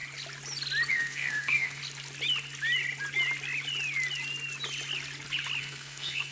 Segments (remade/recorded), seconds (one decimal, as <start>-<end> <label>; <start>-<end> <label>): 0.0-0.9 recorded; 0.9-1.8 remade; 1.8-5.6 recorded; 5.6-6.3 remade